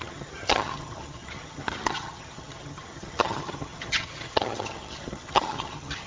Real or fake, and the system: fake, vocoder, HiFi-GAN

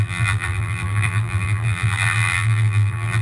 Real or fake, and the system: fake, vocoder, BigVGAN v2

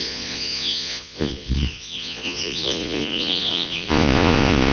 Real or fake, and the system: fake, vocoder, Vocos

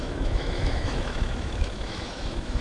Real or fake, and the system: fake, autoencoder, DAC-VAE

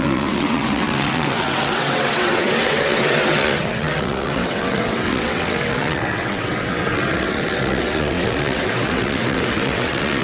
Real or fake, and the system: fake, vocoder, WaveNeXt